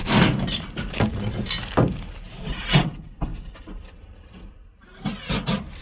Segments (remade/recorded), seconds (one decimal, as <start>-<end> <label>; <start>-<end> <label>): 0.0-5.8 remade